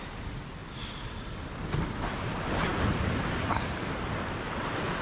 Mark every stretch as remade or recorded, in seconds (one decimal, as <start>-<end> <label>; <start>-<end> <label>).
0.0-5.0 recorded